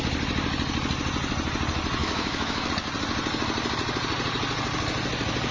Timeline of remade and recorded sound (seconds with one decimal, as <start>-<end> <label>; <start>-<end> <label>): 0.0-2.0 recorded; 2.0-2.7 remade; 2.7-5.5 recorded

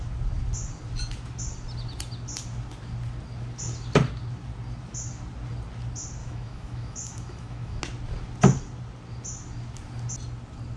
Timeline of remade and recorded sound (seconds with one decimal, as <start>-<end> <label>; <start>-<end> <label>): 0.0-6.2 recorded; 6.2-7.8 remade; 7.8-10.8 recorded

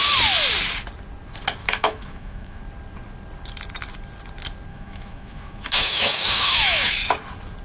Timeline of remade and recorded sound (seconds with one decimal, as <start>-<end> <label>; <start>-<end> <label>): 0.0-1.6 recorded; 1.6-2.6 remade; 2.6-4.7 recorded; 4.7-6.9 remade; 6.9-7.6 recorded

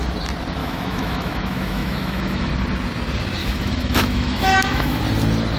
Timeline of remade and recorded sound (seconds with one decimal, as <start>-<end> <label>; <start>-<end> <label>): 0.0-0.6 recorded; 0.6-2.5 remade; 2.5-3.4 recorded; 3.4-5.0 remade; 5.0-5.6 recorded

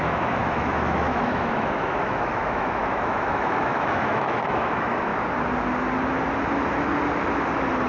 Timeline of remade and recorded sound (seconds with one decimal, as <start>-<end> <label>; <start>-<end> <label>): 0.0-5.1 remade; 5.1-7.9 recorded